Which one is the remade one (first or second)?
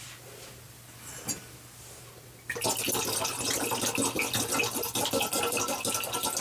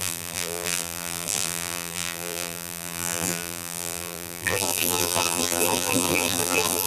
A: second